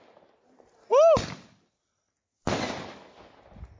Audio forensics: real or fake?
real